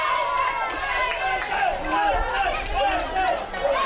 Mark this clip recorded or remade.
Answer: recorded